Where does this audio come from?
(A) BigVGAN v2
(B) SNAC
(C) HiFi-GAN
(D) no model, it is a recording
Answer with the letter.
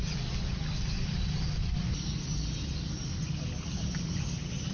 D